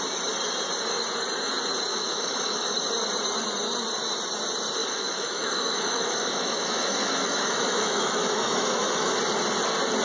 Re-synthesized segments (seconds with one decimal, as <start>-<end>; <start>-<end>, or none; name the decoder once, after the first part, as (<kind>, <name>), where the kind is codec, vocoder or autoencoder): 1.9-2.8 (autoencoder, DAC-VAE); 4.8-9.2